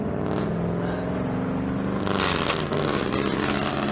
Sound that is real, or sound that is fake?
real